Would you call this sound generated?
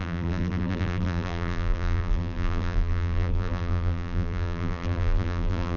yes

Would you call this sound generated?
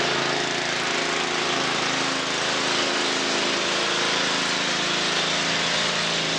no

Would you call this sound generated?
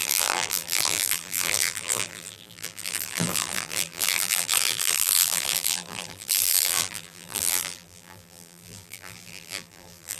yes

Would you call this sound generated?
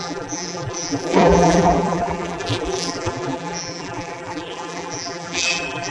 yes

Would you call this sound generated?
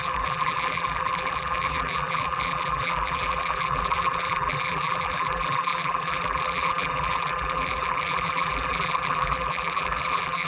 yes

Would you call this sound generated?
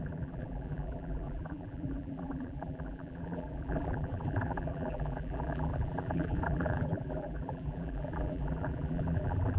yes